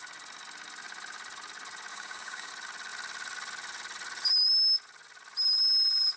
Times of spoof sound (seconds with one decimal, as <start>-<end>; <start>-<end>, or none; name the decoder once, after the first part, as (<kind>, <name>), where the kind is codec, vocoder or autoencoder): 1.9-2.5 (codec, DAC)